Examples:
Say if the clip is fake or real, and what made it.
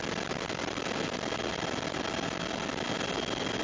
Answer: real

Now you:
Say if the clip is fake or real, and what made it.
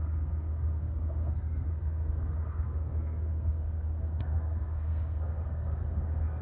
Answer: fake, codec, SNAC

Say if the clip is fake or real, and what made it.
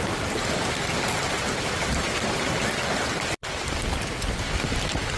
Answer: fake, vocoder, BigVGAN v2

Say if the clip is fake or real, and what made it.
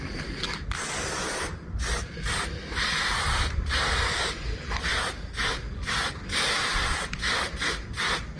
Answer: real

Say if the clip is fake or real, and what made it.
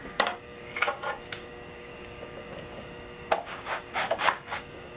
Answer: fake, codec, DAC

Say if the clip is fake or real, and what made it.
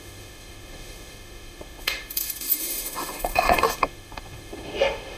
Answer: fake, autoencoder, DAC-VAE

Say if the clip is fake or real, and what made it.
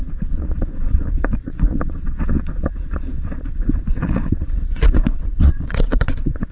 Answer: fake, vocoder, Vocos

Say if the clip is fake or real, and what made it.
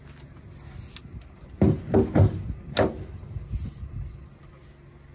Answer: real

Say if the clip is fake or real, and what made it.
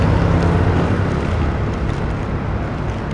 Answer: real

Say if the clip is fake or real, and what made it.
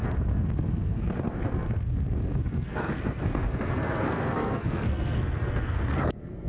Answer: fake, codec, SNAC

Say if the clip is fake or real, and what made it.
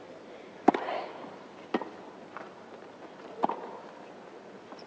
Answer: real